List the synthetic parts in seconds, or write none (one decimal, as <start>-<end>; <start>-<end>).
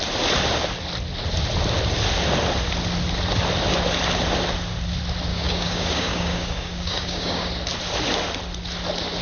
5.3-7.5